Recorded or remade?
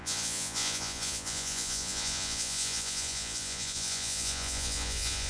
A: remade